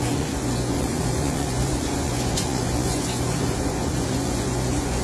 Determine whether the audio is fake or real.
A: fake